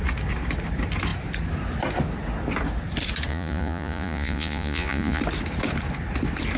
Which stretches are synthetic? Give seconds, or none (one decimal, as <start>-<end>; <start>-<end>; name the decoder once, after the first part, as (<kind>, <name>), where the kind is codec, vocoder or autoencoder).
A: 3.3-5.2 (vocoder, Vocos)